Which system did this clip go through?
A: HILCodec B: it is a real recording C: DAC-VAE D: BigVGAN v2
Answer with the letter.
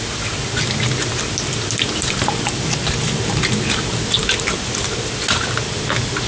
B